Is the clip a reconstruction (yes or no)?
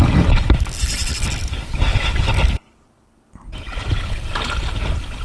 no